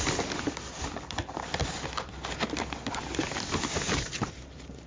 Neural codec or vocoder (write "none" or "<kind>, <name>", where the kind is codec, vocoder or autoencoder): none